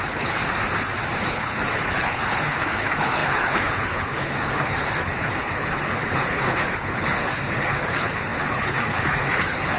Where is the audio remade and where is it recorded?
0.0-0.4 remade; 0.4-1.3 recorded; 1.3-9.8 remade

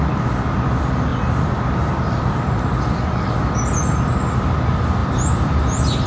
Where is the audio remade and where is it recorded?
0.0-6.1 recorded

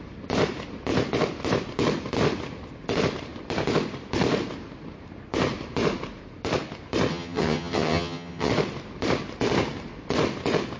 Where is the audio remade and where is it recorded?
0.0-7.1 recorded; 7.1-8.5 remade; 8.5-10.8 recorded

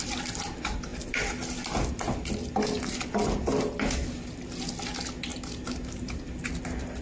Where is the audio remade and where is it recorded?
0.0-5.3 recorded; 5.3-6.5 remade; 6.5-7.0 recorded

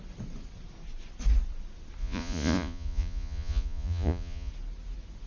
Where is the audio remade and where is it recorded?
0.0-2.0 recorded; 2.0-4.5 remade; 4.5-5.3 recorded

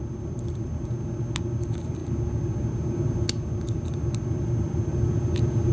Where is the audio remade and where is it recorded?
0.0-5.7 recorded

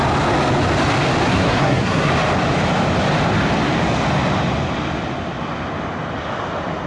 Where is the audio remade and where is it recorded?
0.0-1.3 recorded; 1.3-2.1 remade; 2.1-6.9 recorded